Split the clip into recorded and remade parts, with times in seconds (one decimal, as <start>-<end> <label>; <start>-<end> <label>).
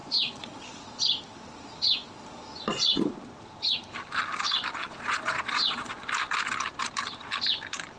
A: 0.0-0.6 remade; 0.6-4.8 recorded; 4.8-5.9 remade; 5.9-8.0 recorded